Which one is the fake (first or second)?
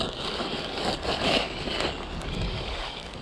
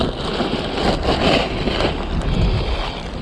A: first